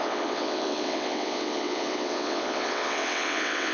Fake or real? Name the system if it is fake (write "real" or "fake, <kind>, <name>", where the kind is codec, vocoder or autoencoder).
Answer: fake, vocoder, WaveNeXt